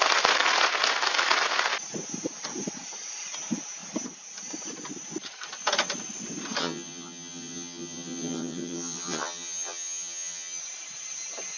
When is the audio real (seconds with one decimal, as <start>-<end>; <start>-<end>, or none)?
0.0-6.6; 10.6-11.6